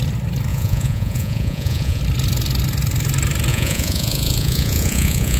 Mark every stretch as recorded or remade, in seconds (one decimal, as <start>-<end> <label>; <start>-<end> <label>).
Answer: 0.0-0.5 recorded; 0.5-2.0 remade; 2.0-3.5 recorded; 3.5-5.4 remade